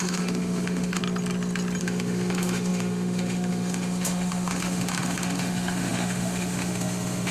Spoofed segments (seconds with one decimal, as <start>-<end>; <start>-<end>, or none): 0.0-1.0; 1.8-7.3